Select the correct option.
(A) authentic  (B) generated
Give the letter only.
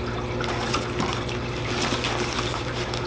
A